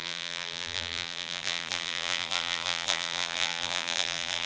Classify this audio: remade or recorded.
remade